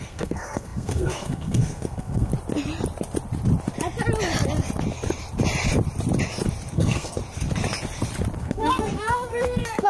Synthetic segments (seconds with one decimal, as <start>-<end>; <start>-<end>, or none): 0.0-2.3; 6.7-7.2; 8.4-9.9